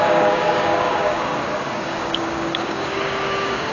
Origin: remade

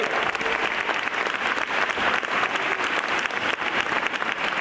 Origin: recorded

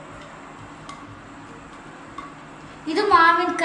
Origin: recorded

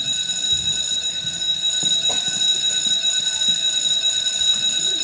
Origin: recorded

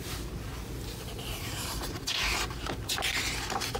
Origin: recorded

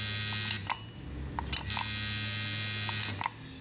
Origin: recorded